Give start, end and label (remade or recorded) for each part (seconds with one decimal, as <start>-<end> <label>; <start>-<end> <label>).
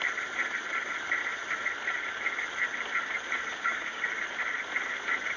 0.0-3.5 recorded; 3.5-4.0 remade; 4.0-5.4 recorded